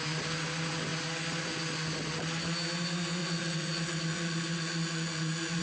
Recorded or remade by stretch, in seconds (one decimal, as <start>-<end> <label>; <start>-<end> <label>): 0.0-3.2 recorded; 3.2-5.6 remade